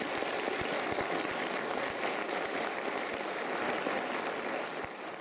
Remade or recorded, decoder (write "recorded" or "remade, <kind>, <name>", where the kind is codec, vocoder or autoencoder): recorded